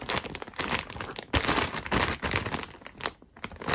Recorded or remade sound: recorded